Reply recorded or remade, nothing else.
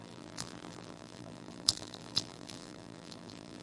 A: remade